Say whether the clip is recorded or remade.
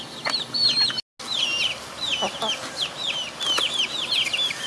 recorded